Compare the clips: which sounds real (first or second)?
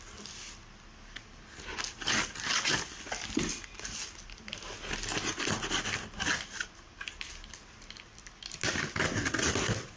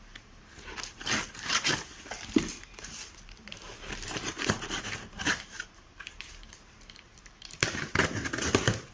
first